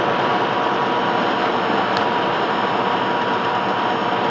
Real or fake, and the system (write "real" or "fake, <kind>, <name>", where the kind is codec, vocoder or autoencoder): real